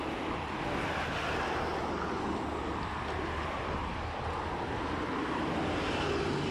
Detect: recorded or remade recorded